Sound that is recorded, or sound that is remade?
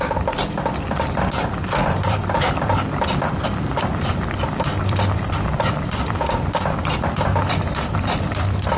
remade